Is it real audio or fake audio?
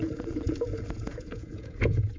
fake